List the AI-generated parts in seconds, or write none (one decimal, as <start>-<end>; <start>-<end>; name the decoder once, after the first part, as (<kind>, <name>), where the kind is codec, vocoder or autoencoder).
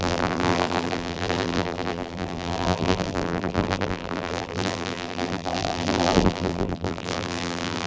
0.0-7.9 (vocoder, BigVGAN v2)